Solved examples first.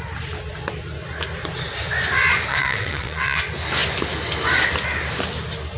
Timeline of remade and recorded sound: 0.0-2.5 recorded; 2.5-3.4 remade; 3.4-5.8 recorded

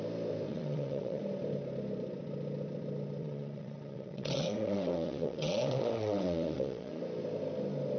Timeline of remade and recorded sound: 0.0-0.5 recorded; 0.5-1.2 remade; 1.2-3.2 recorded; 3.2-7.0 remade; 7.0-8.0 recorded

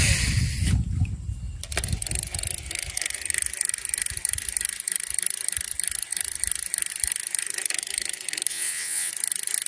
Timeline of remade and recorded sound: 0.0-8.5 recorded; 8.5-9.1 remade; 9.1-9.7 recorded

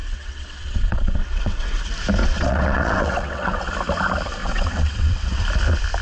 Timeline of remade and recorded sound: 0.0-1.8 remade; 1.8-2.2 recorded; 2.2-3.7 remade; 3.7-4.4 recorded; 4.4-5.4 remade; 5.4-6.0 recorded

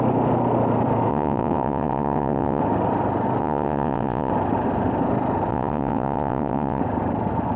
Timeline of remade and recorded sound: 0.0-1.1 recorded; 1.1-2.6 remade; 2.6-3.4 recorded; 3.4-4.3 remade; 4.3-5.5 recorded; 5.5-6.8 remade; 6.8-7.6 recorded

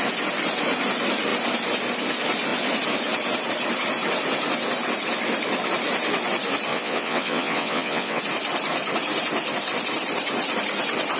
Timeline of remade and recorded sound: 0.0-6.7 recorded; 6.7-8.2 remade; 8.2-11.2 recorded

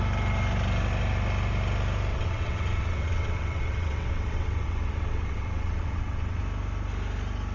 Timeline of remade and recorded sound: 0.0-2.1 recorded; 2.1-6.4 remade; 6.4-7.5 recorded